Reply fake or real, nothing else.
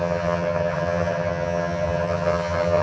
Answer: fake